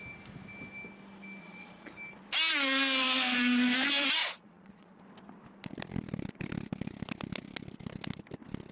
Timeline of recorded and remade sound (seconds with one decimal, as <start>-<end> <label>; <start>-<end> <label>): 0.0-1.4 recorded; 1.4-1.9 remade; 1.9-4.2 recorded; 4.2-5.0 remade; 5.0-8.7 recorded